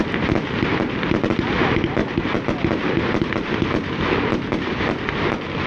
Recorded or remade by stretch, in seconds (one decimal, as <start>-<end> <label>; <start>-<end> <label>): 0.0-5.7 recorded